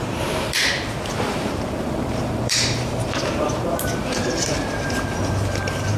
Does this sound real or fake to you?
fake